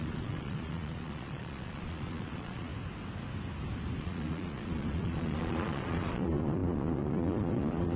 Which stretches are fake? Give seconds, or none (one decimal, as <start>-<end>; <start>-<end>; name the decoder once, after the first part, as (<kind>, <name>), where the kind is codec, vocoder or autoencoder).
0.0-2.7 (vocoder, Vocos); 4.0-8.0